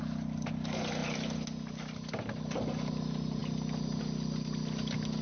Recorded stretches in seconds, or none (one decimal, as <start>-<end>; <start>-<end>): 0.0-5.2